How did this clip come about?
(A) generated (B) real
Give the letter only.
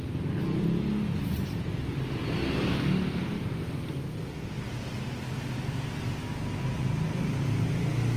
B